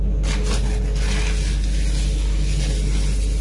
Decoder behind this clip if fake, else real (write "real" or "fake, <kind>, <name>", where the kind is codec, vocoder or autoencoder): real